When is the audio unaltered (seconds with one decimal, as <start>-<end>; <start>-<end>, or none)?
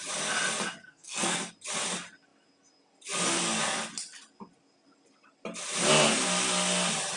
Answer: 0.0-0.8; 1.5-7.2